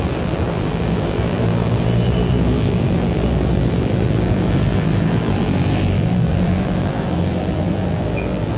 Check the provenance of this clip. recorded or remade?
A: remade